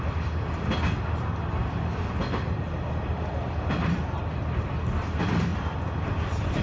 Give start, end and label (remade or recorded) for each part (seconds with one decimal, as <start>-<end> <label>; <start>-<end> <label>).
0.0-6.6 recorded